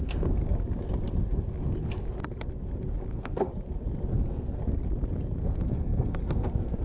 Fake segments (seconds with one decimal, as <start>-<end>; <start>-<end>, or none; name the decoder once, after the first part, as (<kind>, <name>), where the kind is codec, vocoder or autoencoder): 0.0-0.4 (codec, SNAC); 3.1-3.5; 4.1-4.6; 5.4-6.8